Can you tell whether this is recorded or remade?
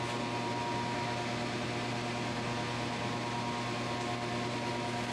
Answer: recorded